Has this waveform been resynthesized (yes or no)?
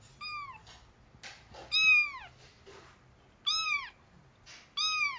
no